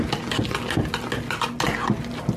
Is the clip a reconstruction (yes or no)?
no